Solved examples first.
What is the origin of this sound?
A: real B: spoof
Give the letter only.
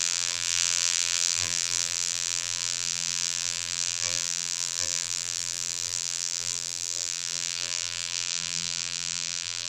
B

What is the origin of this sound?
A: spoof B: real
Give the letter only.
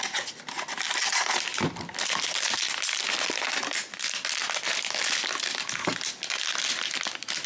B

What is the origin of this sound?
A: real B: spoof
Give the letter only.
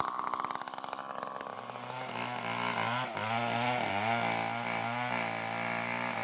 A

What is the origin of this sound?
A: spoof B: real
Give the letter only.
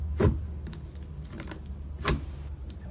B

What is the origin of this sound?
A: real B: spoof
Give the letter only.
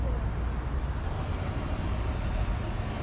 A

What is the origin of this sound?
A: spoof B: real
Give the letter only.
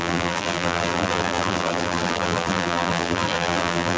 A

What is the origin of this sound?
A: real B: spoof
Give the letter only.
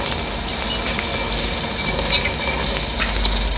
A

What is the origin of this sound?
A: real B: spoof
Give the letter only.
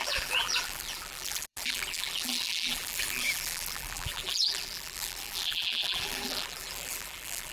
B